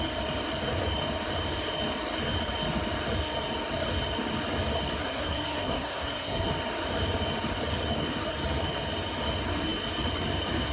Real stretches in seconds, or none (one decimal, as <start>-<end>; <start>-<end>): 0.0-5.0; 6.5-10.7

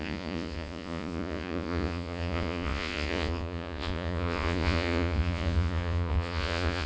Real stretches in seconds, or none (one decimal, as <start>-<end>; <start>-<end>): none

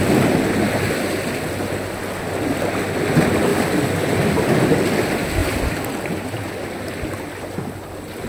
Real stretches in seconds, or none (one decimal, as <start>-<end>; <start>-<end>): 0.0-8.3